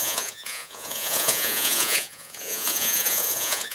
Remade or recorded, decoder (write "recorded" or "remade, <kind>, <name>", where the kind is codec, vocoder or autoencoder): remade, vocoder, Vocos